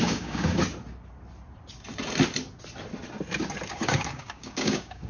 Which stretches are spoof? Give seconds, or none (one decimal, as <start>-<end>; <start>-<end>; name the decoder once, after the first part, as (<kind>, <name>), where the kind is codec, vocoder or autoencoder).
0.0-0.6 (codec, DAC); 3.7-5.1